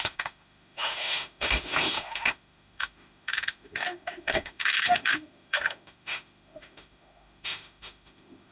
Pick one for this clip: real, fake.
fake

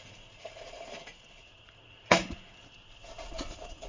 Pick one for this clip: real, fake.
fake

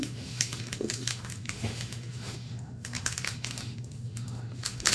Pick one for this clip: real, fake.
fake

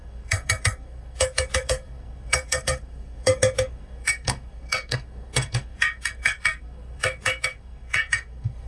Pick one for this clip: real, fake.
fake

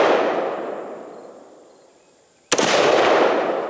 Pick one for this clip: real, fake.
real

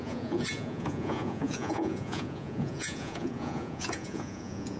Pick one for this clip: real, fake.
fake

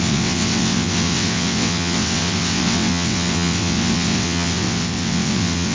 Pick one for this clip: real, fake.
fake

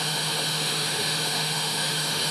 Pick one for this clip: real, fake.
fake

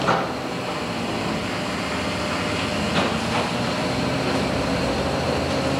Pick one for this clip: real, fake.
real